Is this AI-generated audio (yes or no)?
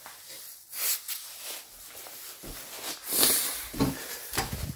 no